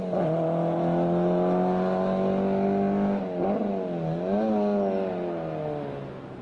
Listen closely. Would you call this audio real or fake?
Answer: real